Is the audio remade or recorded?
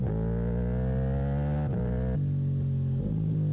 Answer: recorded